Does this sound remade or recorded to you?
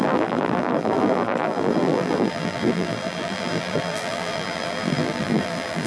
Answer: remade